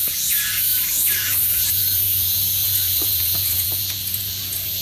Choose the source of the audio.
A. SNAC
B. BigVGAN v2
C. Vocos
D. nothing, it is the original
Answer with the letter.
C